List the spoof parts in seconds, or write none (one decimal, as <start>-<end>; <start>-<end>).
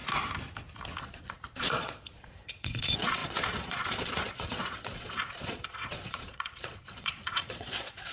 1.0-8.1